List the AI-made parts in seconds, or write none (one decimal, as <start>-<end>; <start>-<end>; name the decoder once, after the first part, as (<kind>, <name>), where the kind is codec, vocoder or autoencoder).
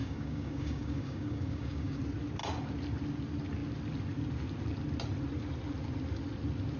0.0-2.0 (codec, DAC)